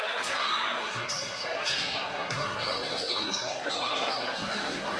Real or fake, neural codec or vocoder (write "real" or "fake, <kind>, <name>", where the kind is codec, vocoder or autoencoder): fake, codec, SNAC